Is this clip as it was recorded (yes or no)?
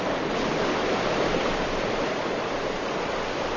yes